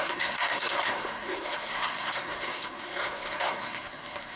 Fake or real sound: fake